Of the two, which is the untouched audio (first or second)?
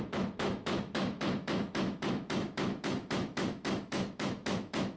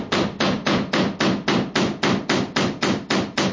second